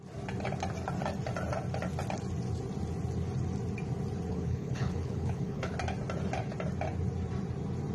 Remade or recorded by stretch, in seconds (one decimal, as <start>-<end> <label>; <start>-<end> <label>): 0.0-4.3 recorded; 4.3-5.7 remade; 5.7-7.9 recorded